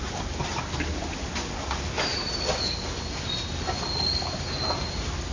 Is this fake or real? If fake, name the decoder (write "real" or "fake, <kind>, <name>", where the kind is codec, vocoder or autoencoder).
real